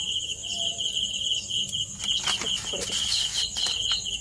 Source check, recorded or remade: recorded